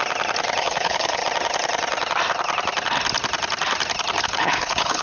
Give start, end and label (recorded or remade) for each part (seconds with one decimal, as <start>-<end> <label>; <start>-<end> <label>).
0.0-0.6 recorded; 0.6-1.2 remade; 1.2-4.2 recorded; 4.2-5.0 remade